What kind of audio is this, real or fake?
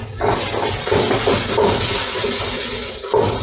real